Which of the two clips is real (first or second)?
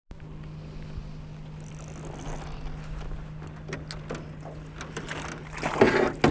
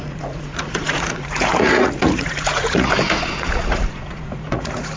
first